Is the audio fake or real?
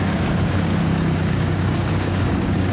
fake